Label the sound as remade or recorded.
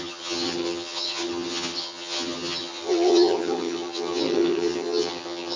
remade